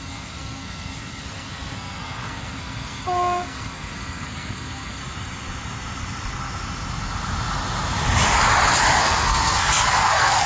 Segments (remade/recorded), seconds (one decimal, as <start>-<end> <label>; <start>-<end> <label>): 0.0-5.0 remade; 5.0-9.0 recorded; 9.0-10.5 remade